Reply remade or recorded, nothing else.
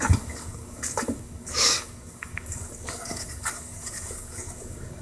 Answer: remade